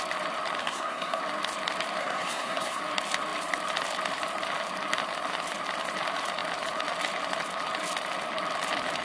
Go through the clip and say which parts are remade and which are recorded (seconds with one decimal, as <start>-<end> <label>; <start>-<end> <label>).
0.0-0.6 recorded; 0.6-1.2 remade; 1.2-2.0 recorded; 2.0-2.8 remade; 2.8-9.0 recorded